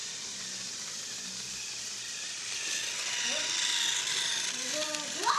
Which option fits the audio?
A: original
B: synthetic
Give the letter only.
A